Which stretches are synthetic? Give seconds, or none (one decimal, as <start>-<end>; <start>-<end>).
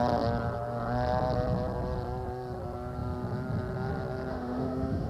4.3-5.1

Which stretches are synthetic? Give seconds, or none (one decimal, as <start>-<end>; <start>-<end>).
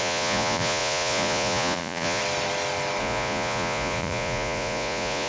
0.0-2.2; 3.0-5.3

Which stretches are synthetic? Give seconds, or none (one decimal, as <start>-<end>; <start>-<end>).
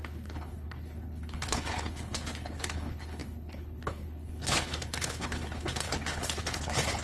0.0-7.0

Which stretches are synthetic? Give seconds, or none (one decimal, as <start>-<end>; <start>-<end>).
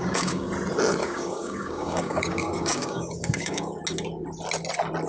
0.0-0.5; 1.0-3.8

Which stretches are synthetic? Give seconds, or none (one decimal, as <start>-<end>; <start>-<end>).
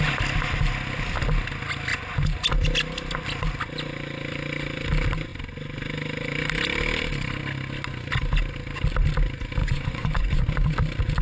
9.6-10.4